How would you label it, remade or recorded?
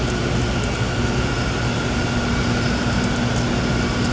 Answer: recorded